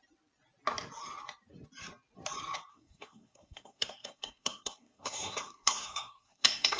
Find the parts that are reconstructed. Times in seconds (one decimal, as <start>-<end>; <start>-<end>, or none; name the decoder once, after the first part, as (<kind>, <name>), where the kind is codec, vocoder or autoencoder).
2.7-6.8 (codec, SNAC)